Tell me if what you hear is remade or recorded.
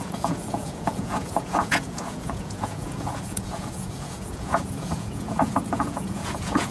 remade